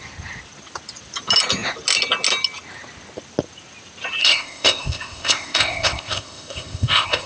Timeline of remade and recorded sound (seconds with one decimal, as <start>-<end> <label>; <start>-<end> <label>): 0.0-4.2 recorded; 4.2-7.3 remade